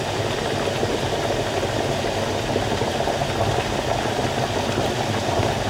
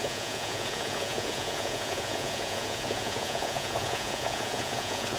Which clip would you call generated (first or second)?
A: second